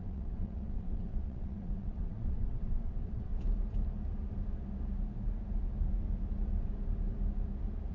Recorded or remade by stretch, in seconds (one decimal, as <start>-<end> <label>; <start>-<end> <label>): 0.0-3.3 remade; 3.3-7.9 recorded